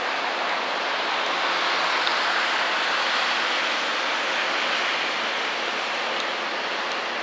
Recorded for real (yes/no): yes